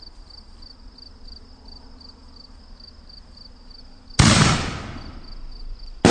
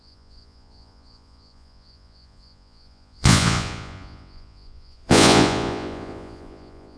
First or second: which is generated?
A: second